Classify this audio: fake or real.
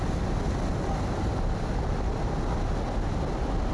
real